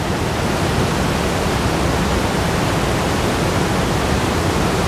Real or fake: real